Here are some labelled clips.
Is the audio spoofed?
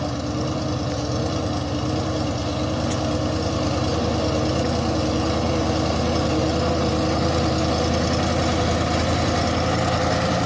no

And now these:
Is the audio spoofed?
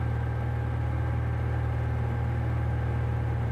no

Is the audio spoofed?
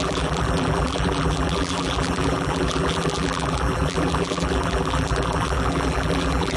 yes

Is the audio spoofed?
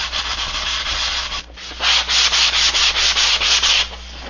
no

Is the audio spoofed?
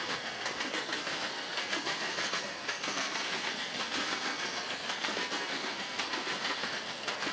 yes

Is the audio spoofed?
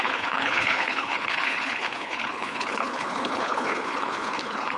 yes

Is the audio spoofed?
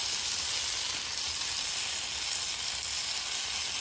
no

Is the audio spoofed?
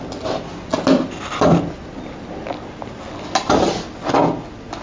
no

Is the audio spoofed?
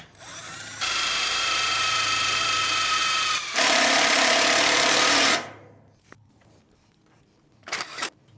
yes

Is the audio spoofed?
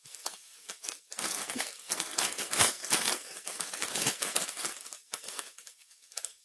yes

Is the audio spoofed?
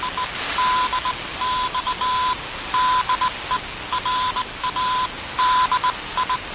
no